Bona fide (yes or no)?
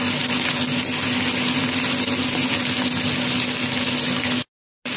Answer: yes